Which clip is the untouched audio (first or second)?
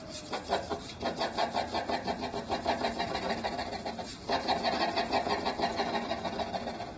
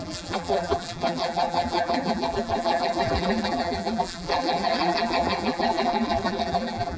first